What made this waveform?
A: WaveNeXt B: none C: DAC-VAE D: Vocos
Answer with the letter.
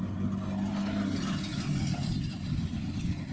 B